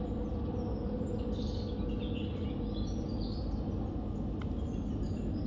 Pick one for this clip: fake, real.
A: real